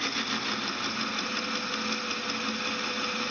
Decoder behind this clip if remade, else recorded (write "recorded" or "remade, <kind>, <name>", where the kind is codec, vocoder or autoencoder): recorded